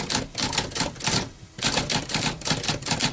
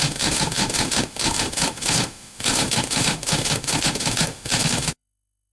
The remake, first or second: second